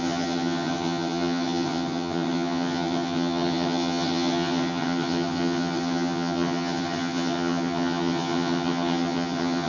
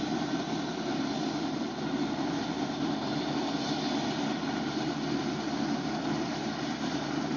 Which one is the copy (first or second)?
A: first